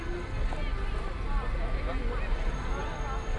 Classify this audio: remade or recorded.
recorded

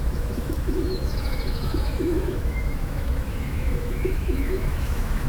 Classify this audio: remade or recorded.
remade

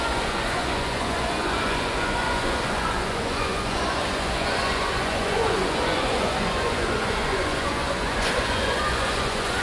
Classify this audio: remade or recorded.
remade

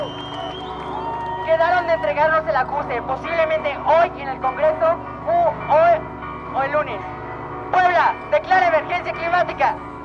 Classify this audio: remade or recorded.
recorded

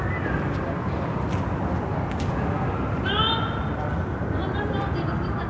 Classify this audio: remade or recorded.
recorded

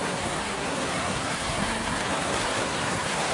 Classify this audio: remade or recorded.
remade